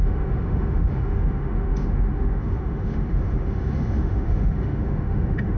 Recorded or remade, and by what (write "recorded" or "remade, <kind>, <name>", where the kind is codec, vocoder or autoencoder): remade, autoencoder, DAC-VAE